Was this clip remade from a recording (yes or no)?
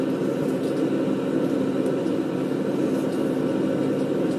no